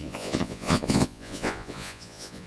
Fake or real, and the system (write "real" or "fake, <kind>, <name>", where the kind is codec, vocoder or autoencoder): fake, vocoder, Vocos